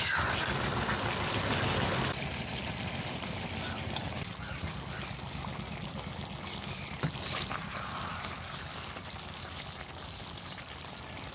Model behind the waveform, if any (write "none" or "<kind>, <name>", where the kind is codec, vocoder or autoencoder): none